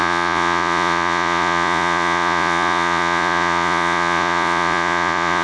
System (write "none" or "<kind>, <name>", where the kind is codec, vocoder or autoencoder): vocoder, Vocos